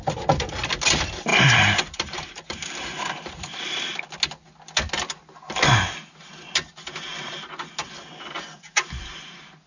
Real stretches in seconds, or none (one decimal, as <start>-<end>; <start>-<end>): 0.0-1.3; 3.6-9.7